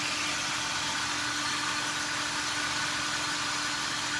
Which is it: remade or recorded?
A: recorded